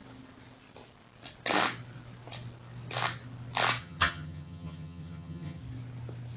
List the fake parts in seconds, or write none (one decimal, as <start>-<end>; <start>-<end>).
3.8-5.6